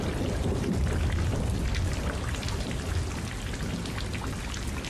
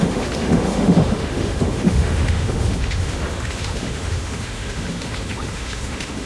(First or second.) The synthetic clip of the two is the second